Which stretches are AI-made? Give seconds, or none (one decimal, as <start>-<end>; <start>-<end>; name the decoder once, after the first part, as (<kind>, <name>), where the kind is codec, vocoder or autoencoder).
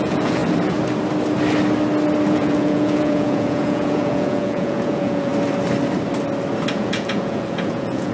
0.0-0.4 (vocoder, Vocos); 2.3-5.3; 6.7-8.1